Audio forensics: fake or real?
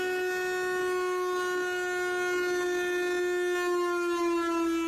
real